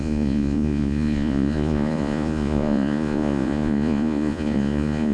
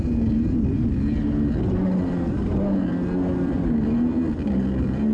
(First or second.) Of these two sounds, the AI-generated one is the first